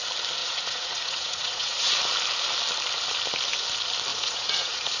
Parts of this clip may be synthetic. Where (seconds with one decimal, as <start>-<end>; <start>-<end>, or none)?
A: 0.4-1.9; 4.1-5.0